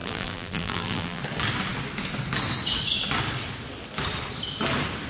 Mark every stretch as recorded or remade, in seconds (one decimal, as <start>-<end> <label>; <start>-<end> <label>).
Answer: 0.0-1.2 remade; 1.2-5.1 recorded